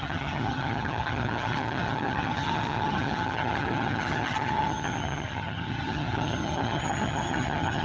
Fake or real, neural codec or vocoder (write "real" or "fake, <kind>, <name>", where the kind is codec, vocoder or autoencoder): fake, vocoder, HiFi-GAN